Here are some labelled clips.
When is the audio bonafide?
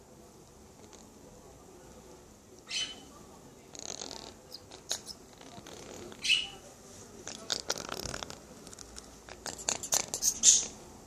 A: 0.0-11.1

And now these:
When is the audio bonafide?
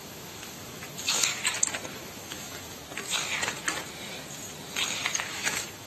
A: 1.4-1.9; 2.8-5.3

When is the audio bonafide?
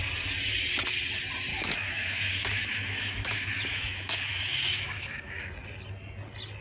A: 0.0-1.5; 5.5-6.6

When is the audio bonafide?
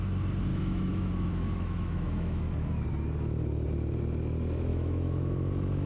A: 0.0-0.5; 2.5-4.7; 5.5-5.9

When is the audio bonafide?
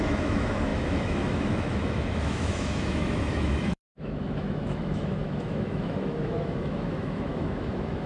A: none